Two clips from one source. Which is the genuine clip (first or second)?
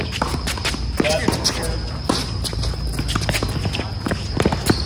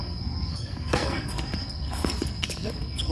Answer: first